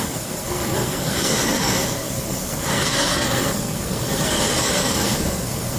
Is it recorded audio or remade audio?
remade